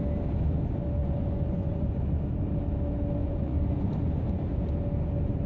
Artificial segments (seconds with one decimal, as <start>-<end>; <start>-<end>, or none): 1.0-2.0; 3.2-4.2